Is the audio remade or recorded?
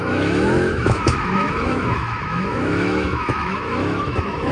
remade